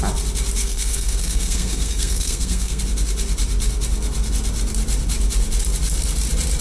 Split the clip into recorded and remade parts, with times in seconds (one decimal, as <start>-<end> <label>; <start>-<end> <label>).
0.0-0.6 recorded; 0.6-2.8 remade; 2.8-6.6 recorded